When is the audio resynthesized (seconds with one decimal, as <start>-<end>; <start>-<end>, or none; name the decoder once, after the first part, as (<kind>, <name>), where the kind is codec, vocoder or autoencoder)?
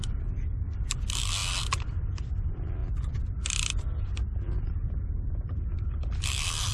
none